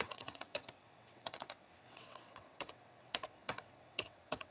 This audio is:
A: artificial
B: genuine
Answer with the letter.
A